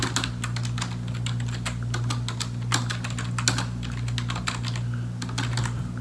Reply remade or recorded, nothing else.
recorded